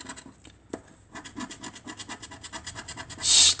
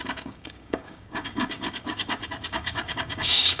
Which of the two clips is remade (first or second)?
second